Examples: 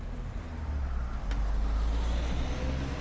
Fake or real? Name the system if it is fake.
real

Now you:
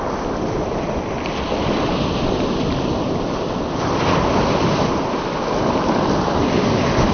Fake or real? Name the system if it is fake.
real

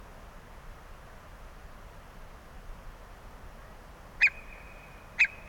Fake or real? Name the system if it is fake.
real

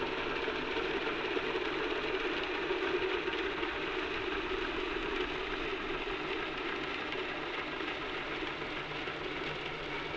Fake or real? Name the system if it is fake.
real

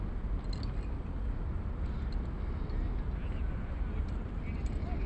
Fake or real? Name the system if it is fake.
real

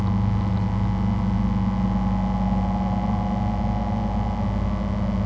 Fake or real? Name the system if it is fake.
real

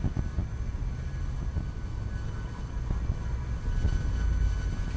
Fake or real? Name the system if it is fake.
real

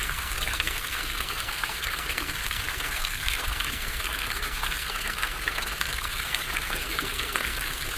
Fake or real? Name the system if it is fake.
fake, codec, SNAC